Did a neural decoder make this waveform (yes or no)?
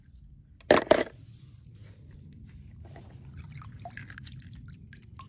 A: no